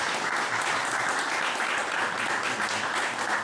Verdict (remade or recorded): recorded